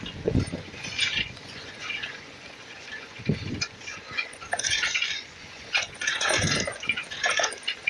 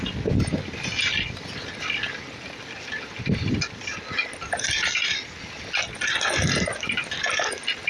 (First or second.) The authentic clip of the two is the second